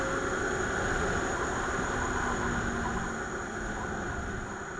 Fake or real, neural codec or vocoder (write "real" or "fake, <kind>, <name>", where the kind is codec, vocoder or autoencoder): real